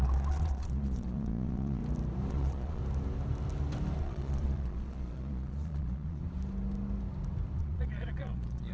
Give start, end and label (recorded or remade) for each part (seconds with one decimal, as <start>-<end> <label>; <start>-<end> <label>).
0.0-1.8 remade; 1.8-2.3 recorded; 2.3-2.8 remade; 2.8-4.0 recorded; 4.0-6.2 remade; 6.2-7.6 recorded; 7.6-8.7 remade